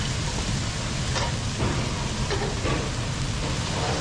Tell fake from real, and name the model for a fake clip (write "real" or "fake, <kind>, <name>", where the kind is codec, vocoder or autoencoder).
real